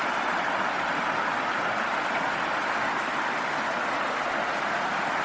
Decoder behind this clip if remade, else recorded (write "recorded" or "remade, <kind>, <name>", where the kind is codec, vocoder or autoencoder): recorded